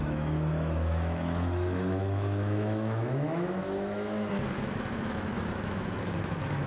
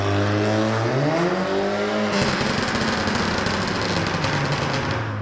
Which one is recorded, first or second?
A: second